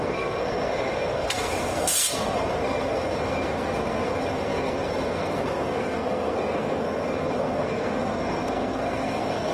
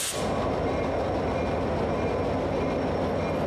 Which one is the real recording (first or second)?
second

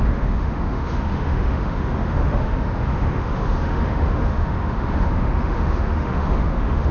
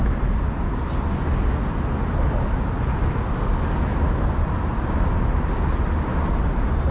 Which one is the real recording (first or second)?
second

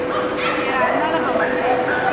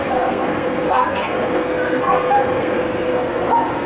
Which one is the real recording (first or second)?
first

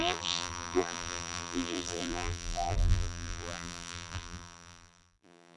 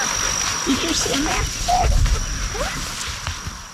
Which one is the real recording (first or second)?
second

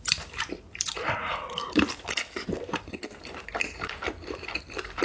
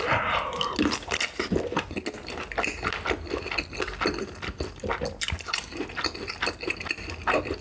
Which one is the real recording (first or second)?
second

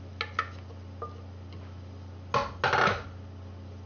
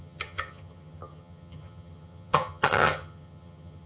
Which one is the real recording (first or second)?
first